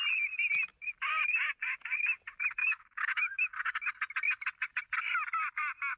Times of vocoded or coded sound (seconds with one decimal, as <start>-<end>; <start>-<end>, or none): 2.6-3.4